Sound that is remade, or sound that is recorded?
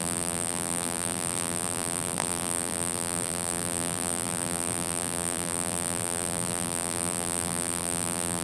remade